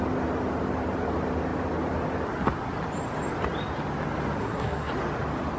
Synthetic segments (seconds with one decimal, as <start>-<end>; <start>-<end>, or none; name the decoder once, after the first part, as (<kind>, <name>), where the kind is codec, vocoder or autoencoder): 4.4-4.9 (codec, SNAC)